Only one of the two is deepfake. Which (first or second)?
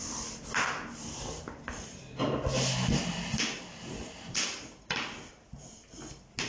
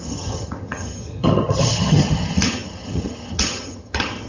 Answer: second